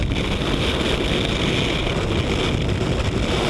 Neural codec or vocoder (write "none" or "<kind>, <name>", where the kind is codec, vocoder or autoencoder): none